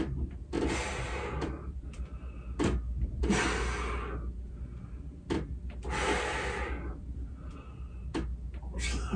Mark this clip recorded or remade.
recorded